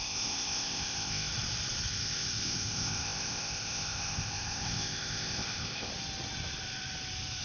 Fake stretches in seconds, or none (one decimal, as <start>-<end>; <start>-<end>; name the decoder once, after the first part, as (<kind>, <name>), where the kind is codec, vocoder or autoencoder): 0.0-1.3 (codec, ZipCodec); 1.9-5.9